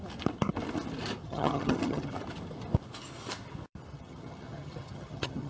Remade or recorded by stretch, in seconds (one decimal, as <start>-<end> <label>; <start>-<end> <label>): 0.0-1.2 recorded; 1.2-2.1 remade; 2.1-3.9 recorded; 3.9-5.5 remade